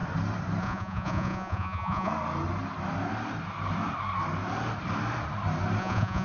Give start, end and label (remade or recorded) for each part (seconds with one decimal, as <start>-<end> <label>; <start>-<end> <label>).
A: 0.0-0.6 recorded; 0.6-2.1 remade; 2.1-5.8 recorded; 5.8-6.2 remade